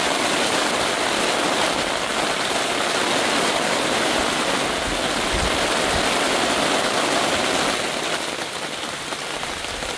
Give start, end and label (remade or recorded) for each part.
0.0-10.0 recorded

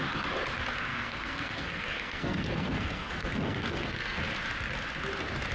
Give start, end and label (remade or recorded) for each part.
0.0-0.9 recorded; 0.9-4.2 remade; 4.2-5.5 recorded

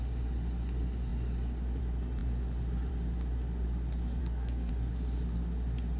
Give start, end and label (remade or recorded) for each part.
0.0-4.2 recorded; 4.2-4.7 remade; 4.7-6.0 recorded

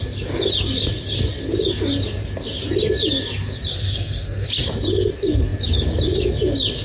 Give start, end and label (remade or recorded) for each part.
0.0-3.7 recorded; 3.7-4.5 remade; 4.5-6.8 recorded

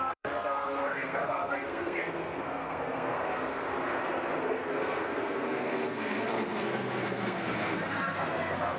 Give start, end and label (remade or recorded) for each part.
0.0-3.4 remade; 3.4-4.4 recorded; 4.4-8.8 remade